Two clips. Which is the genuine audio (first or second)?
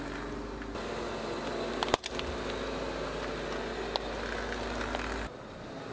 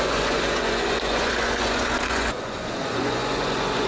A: first